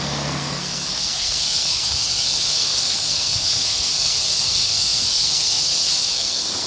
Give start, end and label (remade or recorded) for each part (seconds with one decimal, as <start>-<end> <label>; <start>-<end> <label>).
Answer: 0.0-6.7 remade